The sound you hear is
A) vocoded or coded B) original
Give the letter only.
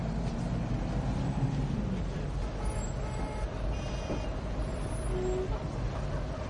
B